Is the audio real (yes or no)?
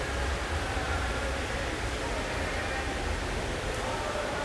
yes